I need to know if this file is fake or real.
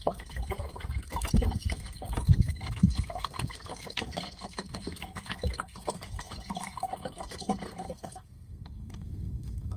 fake